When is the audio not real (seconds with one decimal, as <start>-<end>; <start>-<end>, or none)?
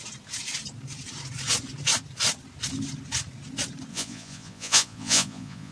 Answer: 3.9-5.7